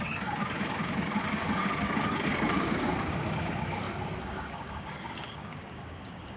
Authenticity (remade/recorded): remade